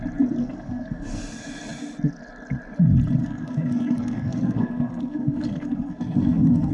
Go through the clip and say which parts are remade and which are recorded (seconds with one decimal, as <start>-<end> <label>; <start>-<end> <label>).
0.0-0.4 recorded; 0.4-1.2 remade; 1.2-3.2 recorded; 3.2-6.7 remade